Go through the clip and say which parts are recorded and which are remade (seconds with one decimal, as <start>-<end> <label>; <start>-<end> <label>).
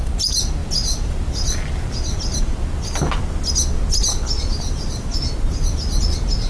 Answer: 0.0-6.5 recorded